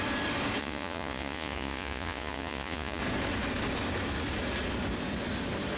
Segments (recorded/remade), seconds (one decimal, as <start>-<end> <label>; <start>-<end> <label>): 0.0-0.6 recorded; 0.6-3.0 remade; 3.0-5.8 recorded

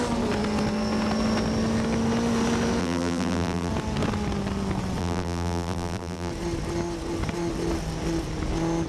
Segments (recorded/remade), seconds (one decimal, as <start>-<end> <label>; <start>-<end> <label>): 0.0-2.8 recorded; 2.8-3.7 remade; 3.7-5.0 recorded; 5.0-6.3 remade; 6.3-8.9 recorded

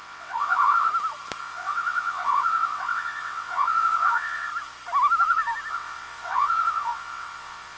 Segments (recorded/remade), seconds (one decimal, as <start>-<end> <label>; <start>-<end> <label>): 0.0-0.9 remade; 0.9-1.4 recorded; 1.4-4.5 remade; 4.5-5.7 recorded; 5.7-7.8 remade

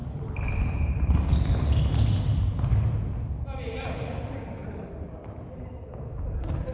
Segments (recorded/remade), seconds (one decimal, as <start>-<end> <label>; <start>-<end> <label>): 0.0-6.7 recorded

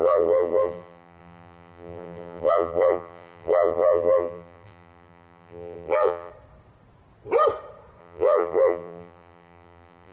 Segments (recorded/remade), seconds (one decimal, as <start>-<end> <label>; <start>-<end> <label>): 0.0-6.3 remade; 6.3-8.0 recorded; 8.0-10.1 remade

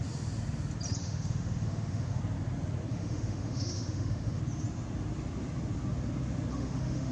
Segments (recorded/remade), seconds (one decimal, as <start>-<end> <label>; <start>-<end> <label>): 0.0-1.0 recorded; 1.0-2.2 remade; 2.2-2.9 recorded; 2.9-4.4 remade; 4.4-6.5 recorded; 6.5-7.1 remade

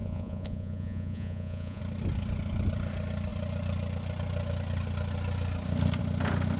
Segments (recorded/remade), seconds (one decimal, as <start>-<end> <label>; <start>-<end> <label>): 0.0-1.8 remade; 1.8-6.6 recorded

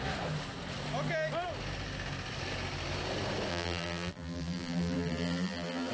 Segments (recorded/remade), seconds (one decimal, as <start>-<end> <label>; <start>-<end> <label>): 0.0-3.5 recorded; 3.5-5.9 remade